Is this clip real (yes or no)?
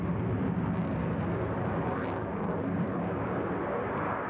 yes